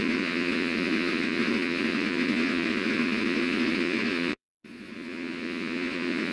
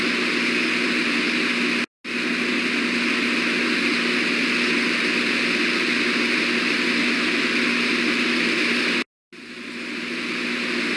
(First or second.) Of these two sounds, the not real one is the first